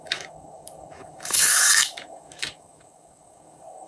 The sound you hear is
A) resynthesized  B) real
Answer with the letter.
A